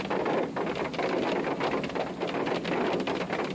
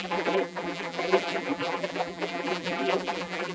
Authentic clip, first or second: first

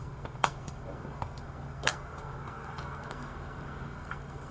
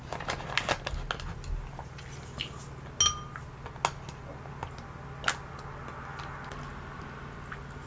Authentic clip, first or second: second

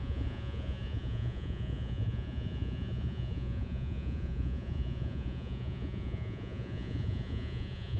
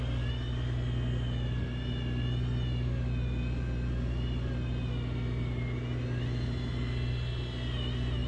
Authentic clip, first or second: second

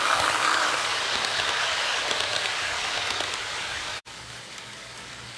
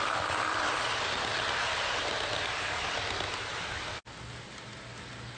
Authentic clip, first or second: second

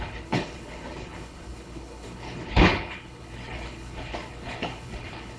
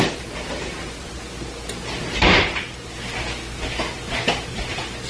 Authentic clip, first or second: second